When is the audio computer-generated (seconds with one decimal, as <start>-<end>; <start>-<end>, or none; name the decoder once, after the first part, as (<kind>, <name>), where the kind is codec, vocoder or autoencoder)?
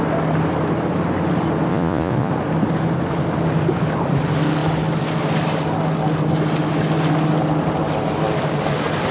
1.7-2.3 (vocoder, Vocos)